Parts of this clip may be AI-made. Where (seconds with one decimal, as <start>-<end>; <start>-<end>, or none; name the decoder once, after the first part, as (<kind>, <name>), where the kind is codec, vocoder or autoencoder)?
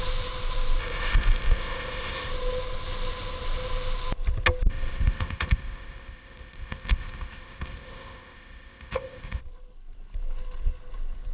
0.8-2.3 (codec, ZipCodec); 4.7-9.4